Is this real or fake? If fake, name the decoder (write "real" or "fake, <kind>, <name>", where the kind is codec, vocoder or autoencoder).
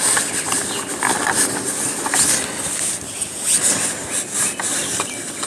real